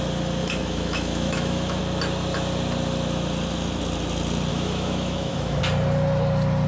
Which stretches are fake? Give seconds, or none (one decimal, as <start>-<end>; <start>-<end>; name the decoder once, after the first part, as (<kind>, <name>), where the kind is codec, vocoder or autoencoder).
0.4-1.8 (autoencoder, DAC-VAE); 4.5-5.6